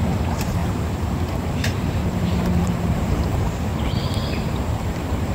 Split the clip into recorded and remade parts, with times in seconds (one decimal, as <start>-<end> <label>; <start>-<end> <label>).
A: 0.0-3.7 remade; 3.7-4.8 recorded; 4.8-5.3 remade